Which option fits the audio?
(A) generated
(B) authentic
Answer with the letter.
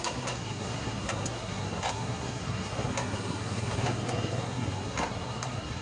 A